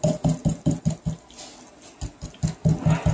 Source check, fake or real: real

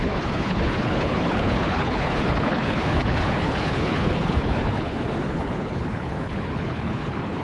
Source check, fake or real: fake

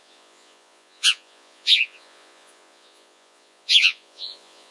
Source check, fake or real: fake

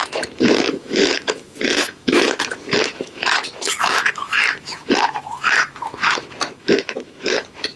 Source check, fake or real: fake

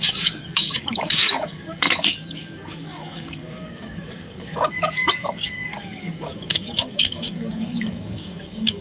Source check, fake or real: fake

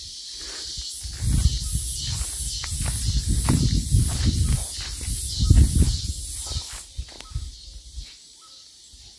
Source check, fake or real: real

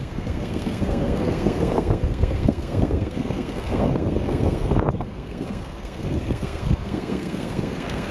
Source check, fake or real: fake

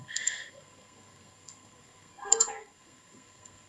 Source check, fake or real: fake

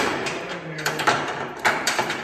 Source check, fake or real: fake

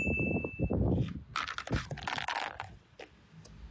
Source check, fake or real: real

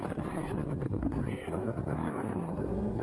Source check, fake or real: fake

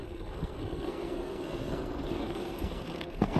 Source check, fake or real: fake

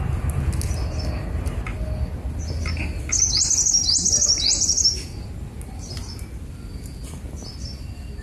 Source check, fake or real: real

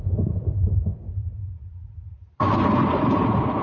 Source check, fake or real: fake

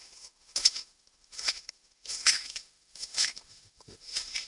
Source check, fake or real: fake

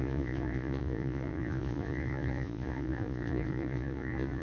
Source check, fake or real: fake